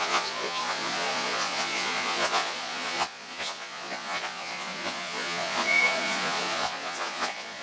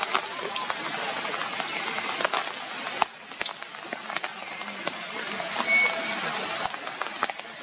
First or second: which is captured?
second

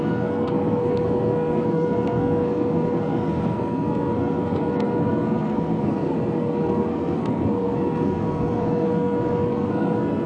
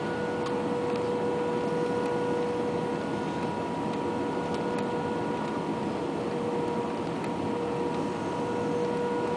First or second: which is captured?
second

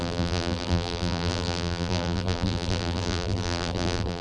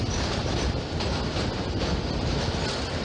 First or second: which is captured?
second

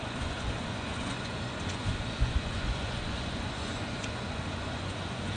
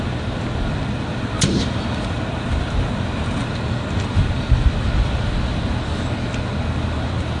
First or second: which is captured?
second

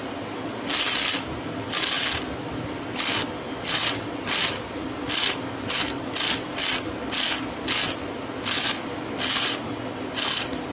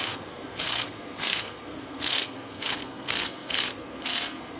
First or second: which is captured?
first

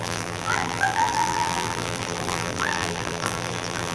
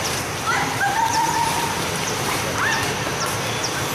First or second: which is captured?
second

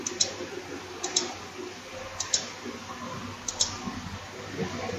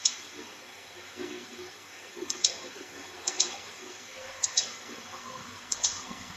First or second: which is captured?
first